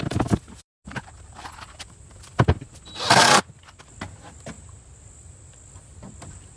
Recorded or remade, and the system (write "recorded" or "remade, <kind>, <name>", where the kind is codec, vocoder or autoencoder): remade, vocoder, BigVGAN v2